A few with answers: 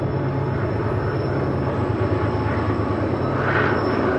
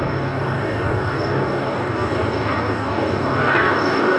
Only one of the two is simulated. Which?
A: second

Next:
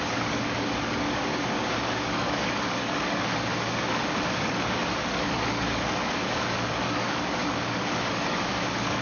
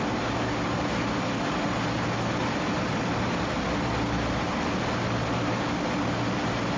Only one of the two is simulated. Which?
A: first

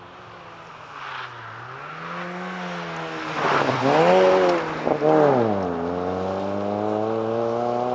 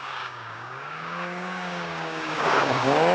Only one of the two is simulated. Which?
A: second